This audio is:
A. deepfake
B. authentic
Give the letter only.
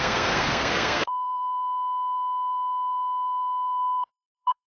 A